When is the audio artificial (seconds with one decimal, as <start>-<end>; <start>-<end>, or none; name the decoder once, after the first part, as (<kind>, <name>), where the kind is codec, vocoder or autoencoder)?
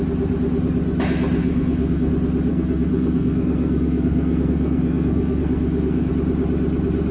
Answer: 1.4-2.1 (codec, SNAC); 2.5-6.1